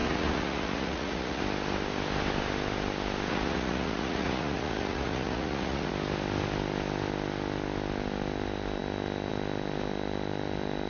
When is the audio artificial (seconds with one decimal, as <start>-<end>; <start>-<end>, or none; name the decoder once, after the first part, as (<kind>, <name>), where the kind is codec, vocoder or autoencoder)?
0.0-1.4 (vocoder, Vocos); 3.3-5.9